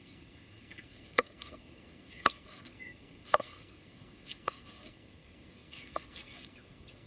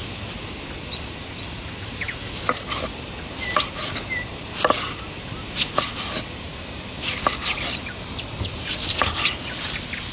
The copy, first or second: first